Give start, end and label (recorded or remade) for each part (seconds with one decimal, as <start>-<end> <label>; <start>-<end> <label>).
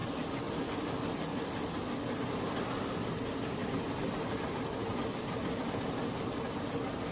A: 0.0-7.1 recorded